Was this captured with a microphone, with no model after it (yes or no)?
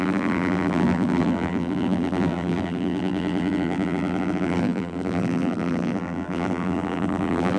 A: no